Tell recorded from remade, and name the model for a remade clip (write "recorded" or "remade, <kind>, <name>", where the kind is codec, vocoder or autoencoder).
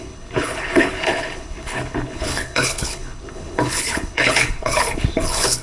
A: remade, codec, HILCodec